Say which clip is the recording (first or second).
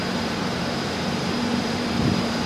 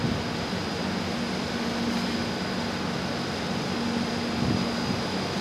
second